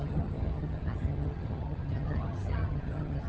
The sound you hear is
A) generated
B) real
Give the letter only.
A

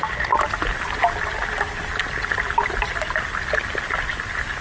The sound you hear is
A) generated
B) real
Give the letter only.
B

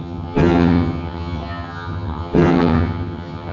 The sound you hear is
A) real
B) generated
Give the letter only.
B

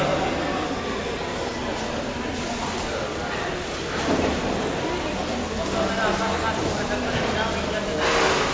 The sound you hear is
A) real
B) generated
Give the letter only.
A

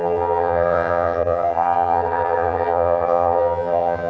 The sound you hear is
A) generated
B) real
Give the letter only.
A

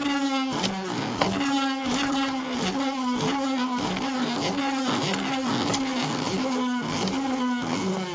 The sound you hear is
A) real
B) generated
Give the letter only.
A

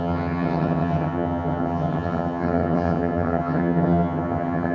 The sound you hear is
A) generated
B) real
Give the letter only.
A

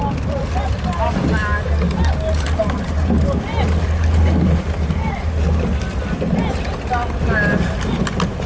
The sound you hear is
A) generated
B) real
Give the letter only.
B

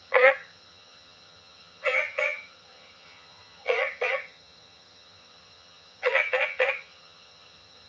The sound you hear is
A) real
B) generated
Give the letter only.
B